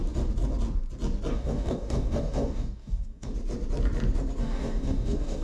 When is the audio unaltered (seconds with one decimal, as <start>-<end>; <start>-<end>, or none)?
0.0-1.3; 3.3-4.4